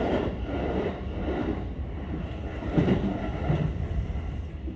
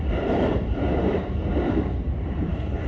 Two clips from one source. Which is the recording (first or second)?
first